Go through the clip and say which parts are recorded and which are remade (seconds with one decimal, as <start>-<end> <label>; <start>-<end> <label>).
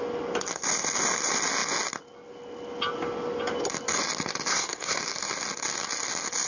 0.0-4.5 recorded; 4.5-5.0 remade; 5.0-6.5 recorded